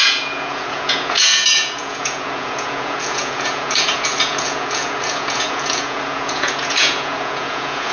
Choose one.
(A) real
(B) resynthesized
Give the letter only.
B